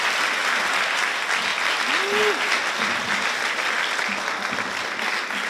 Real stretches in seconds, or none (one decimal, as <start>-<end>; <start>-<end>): 0.0-5.5